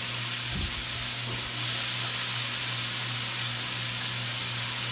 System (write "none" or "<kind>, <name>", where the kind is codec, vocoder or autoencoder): none